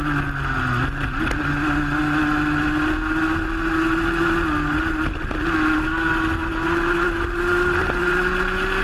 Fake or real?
real